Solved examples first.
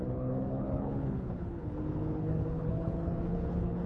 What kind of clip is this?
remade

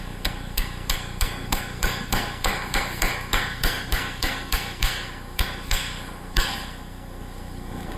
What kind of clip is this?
remade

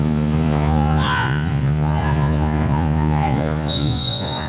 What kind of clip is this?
remade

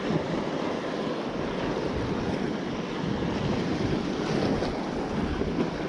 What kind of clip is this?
recorded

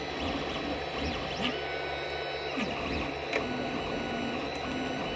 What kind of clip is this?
recorded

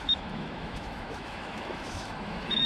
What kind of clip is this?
remade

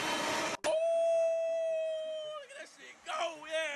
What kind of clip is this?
recorded